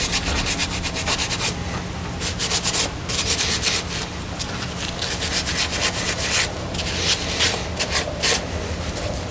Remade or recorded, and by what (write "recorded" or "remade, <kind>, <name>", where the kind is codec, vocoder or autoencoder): recorded